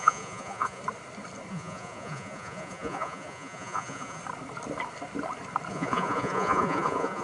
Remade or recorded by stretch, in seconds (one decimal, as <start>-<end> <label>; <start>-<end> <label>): 0.0-0.8 remade; 0.8-1.5 recorded; 1.5-4.2 remade; 4.2-5.7 recorded; 5.7-7.2 remade